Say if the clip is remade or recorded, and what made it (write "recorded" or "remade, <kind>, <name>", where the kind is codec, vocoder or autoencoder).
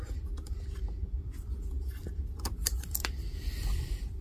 remade, vocoder, BigVGAN v2